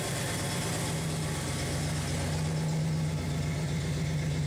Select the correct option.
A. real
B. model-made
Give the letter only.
A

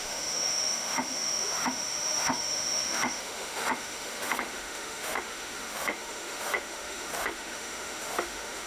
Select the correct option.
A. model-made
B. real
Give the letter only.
A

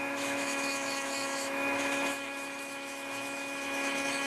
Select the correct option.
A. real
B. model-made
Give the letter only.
B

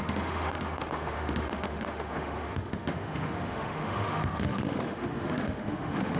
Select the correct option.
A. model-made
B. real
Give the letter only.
A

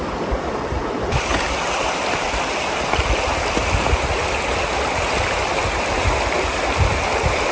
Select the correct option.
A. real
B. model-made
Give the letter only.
A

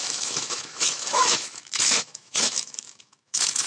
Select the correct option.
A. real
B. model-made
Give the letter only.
B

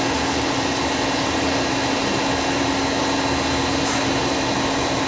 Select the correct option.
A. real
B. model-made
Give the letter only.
A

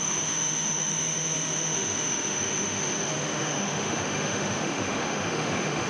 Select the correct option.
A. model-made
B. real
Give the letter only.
A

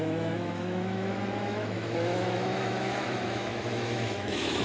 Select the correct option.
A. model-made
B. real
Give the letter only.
A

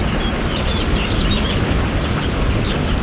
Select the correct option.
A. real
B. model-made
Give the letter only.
A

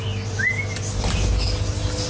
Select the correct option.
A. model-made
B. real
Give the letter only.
B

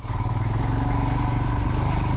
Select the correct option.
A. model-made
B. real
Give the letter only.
B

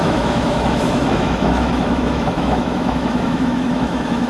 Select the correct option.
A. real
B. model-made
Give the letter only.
B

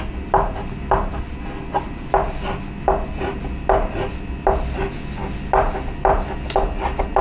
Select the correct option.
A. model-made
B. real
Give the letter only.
B